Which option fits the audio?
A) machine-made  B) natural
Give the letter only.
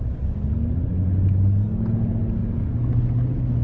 B